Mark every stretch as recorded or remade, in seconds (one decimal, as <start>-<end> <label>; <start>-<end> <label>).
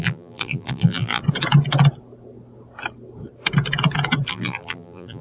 0.0-1.2 remade; 1.2-4.3 recorded; 4.3-5.2 remade